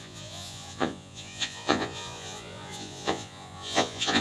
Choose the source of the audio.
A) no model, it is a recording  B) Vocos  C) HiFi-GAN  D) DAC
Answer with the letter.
B